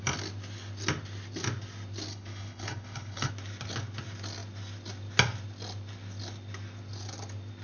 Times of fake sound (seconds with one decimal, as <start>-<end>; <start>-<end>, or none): 2.1-3.3